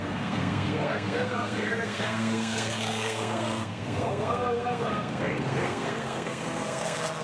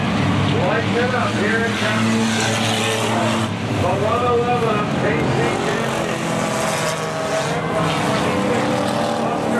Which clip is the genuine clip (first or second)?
second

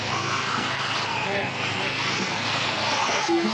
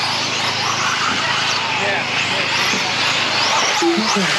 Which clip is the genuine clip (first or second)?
second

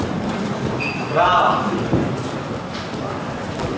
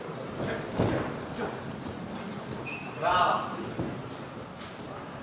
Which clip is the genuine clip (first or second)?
first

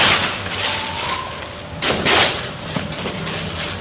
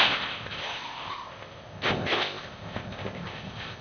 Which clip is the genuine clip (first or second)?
first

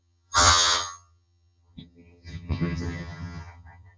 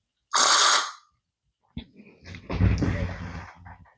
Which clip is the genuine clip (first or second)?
second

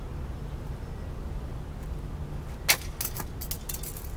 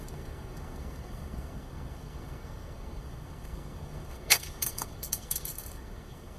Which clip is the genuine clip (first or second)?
first